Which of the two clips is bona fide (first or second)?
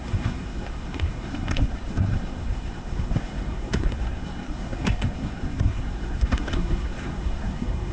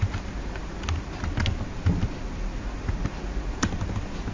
second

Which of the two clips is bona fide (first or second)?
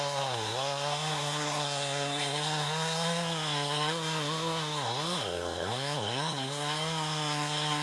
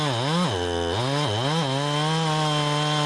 second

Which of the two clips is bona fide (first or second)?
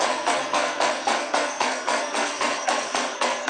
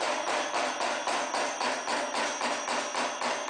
second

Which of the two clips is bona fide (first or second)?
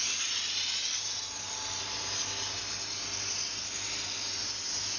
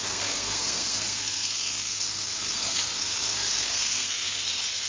first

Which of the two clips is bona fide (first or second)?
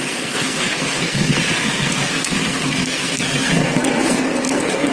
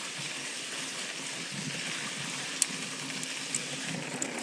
second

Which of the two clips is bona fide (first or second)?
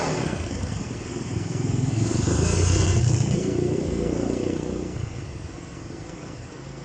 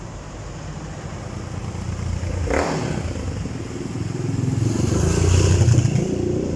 second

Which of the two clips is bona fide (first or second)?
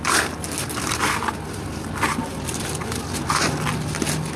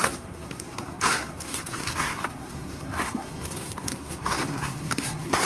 first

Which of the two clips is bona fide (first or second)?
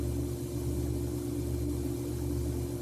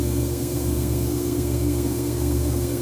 first